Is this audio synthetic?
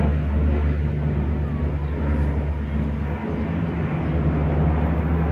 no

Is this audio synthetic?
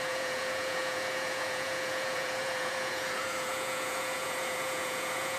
yes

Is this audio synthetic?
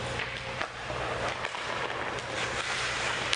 no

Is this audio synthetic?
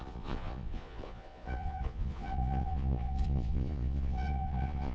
yes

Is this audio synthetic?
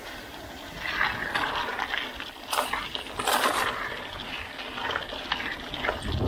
no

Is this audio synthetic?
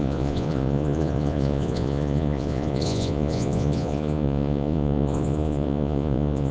yes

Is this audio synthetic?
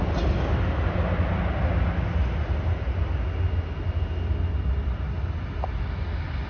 no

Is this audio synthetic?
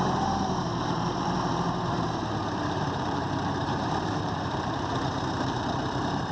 yes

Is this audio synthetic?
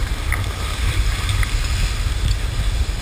yes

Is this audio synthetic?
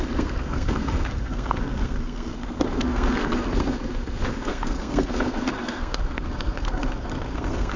yes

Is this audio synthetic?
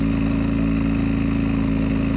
no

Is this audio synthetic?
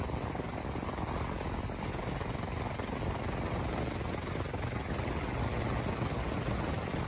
no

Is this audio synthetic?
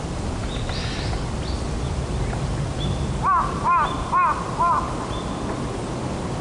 no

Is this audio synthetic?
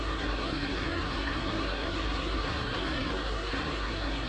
yes